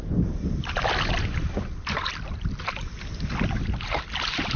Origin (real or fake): real